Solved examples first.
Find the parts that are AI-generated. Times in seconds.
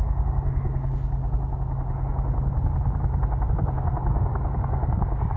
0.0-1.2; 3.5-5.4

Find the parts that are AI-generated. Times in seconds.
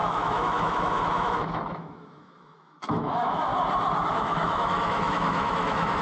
0.0-3.5; 4.1-6.0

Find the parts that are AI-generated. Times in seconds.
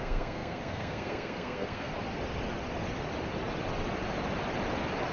0.0-1.9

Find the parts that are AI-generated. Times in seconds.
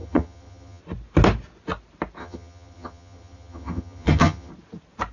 0.0-0.8; 2.2-4.5